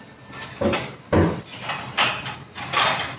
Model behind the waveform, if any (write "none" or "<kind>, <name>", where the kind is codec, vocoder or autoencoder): none